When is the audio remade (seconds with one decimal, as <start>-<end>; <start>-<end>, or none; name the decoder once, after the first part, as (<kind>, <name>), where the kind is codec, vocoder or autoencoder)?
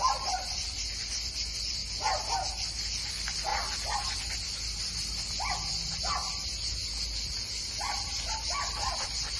0.0-1.8 (vocoder, BigVGAN v2); 2.5-3.5; 5.3-6.2; 8.3-9.4